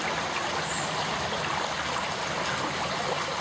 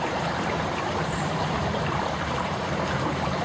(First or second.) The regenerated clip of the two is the second